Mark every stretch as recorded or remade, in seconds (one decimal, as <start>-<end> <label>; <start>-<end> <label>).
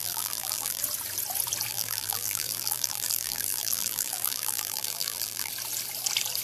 0.0-0.8 remade; 0.8-1.7 recorded; 1.7-5.5 remade; 5.5-6.4 recorded